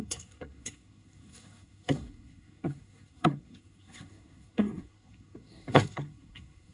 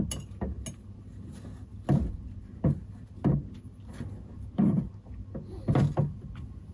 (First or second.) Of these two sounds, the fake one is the first